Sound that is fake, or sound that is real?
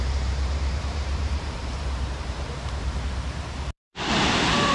fake